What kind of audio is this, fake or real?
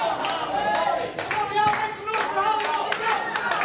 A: real